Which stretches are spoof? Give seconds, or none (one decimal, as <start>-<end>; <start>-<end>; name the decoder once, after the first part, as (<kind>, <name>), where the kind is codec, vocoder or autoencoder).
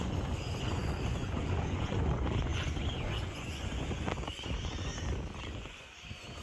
0.0-4.9 (vocoder, Vocos); 5.4-6.4